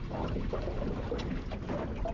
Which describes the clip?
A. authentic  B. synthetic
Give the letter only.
A